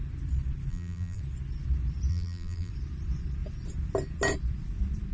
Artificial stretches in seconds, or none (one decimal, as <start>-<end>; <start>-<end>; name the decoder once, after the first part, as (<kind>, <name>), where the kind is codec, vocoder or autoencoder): 0.7-1.2 (vocoder, BigVGAN v2); 2.1-2.7